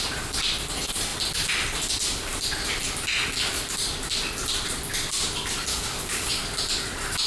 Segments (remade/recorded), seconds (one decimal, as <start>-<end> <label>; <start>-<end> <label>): 0.0-5.7 recorded; 5.7-6.3 remade; 6.3-7.3 recorded